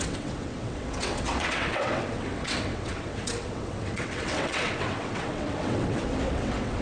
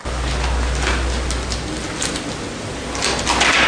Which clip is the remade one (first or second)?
first